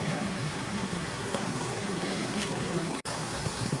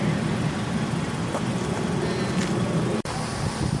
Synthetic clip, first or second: first